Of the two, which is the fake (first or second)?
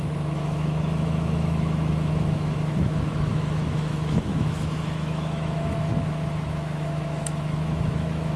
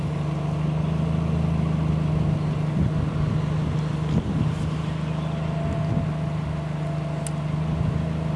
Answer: first